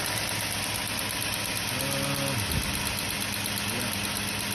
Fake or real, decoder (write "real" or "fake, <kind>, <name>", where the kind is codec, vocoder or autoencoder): real